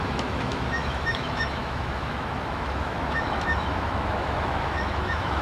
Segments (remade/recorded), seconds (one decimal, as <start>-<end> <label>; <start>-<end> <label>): 0.0-5.4 remade